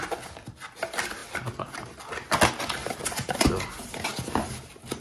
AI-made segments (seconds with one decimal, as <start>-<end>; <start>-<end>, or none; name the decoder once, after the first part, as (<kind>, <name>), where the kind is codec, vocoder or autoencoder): 2.8-3.5 (vocoder, BigVGAN v2)